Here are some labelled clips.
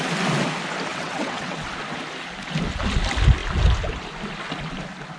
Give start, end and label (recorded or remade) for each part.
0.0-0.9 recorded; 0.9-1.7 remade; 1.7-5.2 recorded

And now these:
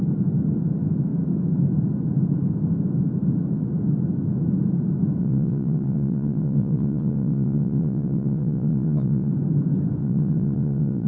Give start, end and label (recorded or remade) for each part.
0.0-5.2 recorded; 5.2-9.3 remade; 9.3-10.0 recorded; 10.0-11.1 remade

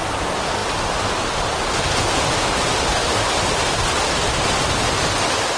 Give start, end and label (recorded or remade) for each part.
0.0-5.6 recorded